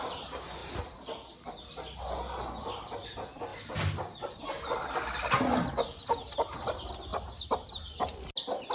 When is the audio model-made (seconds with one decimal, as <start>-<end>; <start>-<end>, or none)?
0.6-1.5